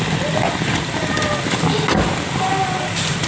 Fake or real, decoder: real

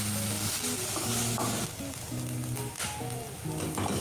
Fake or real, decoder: real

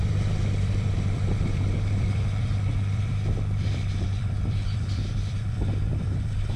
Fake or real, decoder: fake, vocoder, BigVGAN v2